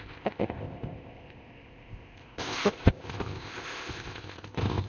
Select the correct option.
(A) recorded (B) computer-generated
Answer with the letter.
B